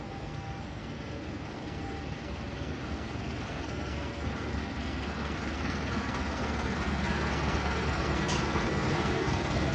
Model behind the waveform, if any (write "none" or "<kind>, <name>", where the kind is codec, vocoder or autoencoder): codec, SNAC